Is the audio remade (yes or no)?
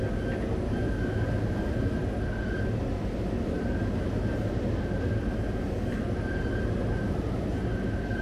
no